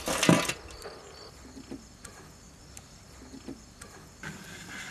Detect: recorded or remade recorded